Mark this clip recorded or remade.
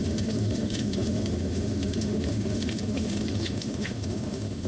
remade